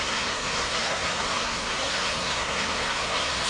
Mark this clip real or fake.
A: fake